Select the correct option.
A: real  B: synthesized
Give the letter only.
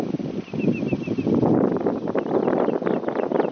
A